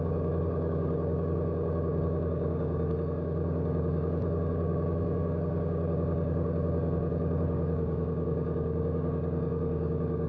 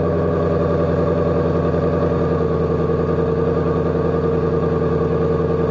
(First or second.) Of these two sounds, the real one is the second